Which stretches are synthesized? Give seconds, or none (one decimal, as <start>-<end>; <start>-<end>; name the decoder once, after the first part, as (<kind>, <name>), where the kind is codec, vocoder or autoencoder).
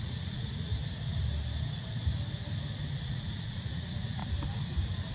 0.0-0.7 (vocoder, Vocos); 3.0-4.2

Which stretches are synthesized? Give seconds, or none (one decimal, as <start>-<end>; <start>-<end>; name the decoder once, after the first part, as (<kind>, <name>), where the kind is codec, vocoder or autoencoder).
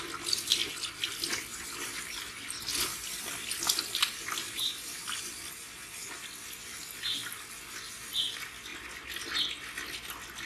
none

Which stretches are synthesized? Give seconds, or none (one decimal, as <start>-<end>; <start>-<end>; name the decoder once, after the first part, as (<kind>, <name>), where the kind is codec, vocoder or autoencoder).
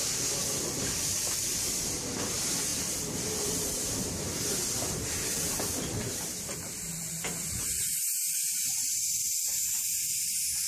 0.0-10.7 (vocoder, BigVGAN v2)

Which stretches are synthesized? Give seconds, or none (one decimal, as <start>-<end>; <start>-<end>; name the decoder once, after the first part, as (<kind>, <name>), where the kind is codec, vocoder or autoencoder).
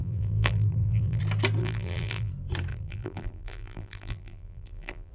0.0-1.2 (vocoder, BigVGAN v2); 1.6-2.3; 2.7-5.1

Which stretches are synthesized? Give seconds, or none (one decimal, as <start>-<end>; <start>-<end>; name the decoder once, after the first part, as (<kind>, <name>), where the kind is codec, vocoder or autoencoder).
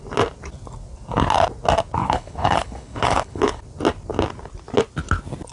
2.0-3.6 (codec, HILCodec)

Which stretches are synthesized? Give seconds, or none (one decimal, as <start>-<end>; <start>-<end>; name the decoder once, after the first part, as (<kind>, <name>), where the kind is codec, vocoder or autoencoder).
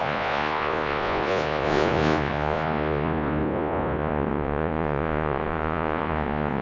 0.0-6.6 (vocoder, Vocos)